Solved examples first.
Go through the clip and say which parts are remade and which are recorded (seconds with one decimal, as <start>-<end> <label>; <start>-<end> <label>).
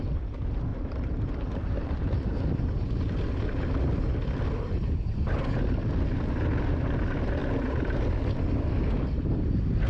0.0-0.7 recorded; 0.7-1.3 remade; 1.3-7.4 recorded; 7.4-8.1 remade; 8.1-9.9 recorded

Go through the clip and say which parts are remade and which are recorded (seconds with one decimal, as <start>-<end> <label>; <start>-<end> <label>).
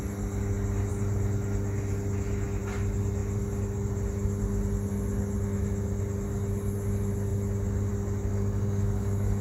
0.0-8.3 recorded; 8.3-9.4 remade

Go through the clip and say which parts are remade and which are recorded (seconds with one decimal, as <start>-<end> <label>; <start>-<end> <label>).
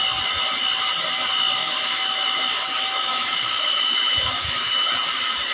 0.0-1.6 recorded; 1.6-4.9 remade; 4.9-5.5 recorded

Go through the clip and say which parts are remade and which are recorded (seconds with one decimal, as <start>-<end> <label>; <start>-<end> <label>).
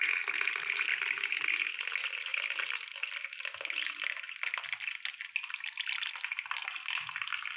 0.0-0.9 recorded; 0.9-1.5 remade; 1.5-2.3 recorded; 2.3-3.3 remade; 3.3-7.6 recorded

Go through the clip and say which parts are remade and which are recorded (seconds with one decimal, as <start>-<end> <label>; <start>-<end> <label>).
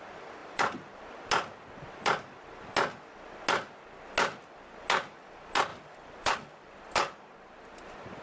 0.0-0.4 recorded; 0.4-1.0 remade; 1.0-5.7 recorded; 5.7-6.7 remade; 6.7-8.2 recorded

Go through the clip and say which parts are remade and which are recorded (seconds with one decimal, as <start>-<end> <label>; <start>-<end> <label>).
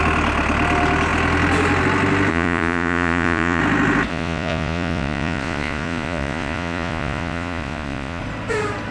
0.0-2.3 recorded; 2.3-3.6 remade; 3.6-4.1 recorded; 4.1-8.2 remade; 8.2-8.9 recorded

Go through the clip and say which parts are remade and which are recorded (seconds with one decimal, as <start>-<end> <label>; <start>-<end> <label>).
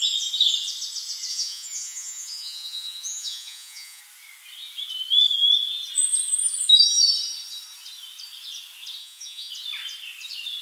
0.0-1.3 recorded; 1.3-4.0 remade; 4.0-9.0 recorded; 9.0-9.5 remade; 9.5-10.6 recorded